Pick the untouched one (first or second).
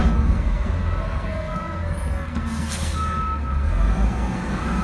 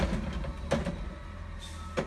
second